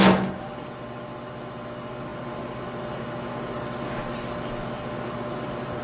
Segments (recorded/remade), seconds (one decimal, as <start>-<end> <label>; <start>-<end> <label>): 0.0-5.8 recorded